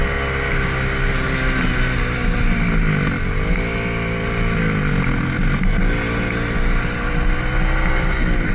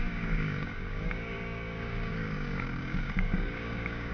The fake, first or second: second